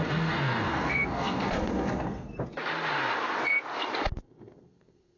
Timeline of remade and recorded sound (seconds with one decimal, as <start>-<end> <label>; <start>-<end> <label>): 0.0-2.3 remade; 2.3-4.2 recorded; 4.2-5.2 remade